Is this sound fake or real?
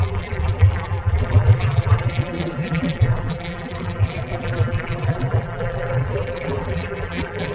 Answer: fake